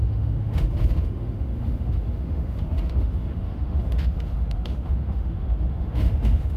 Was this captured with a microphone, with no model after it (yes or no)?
no